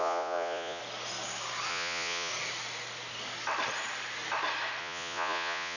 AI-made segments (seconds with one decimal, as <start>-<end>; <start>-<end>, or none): 0.0-0.8; 1.7-2.3; 4.8-5.8